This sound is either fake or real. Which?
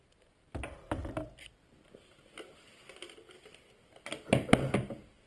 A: real